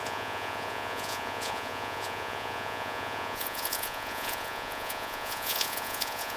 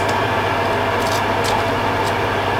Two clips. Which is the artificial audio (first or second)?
first